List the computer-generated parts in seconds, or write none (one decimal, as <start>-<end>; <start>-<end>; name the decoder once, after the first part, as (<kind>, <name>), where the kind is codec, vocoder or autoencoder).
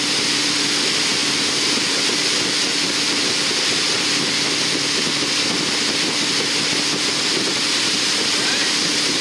none